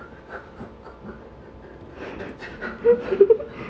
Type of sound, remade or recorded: recorded